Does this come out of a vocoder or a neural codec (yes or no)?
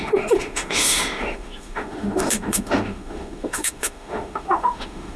yes